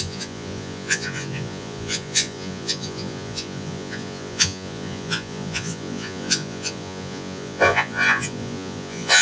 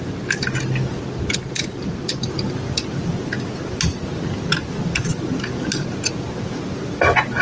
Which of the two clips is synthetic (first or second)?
first